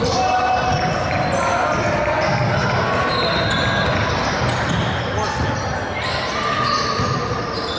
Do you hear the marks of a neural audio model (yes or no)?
no